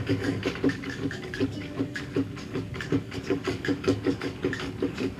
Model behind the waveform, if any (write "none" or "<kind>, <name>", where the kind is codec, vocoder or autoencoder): codec, DAC